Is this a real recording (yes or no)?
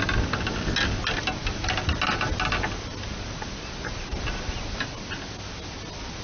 yes